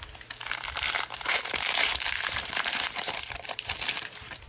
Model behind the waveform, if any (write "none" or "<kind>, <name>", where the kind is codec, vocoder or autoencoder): vocoder, BigVGAN v2